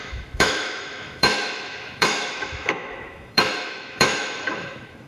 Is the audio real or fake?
fake